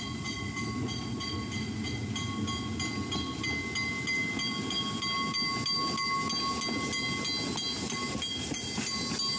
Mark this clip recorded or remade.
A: recorded